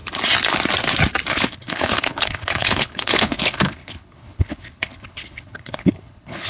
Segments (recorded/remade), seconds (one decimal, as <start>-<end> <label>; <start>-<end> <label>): 0.0-1.3 recorded; 1.3-6.5 remade